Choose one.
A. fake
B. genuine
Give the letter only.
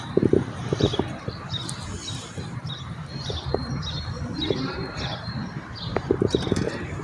A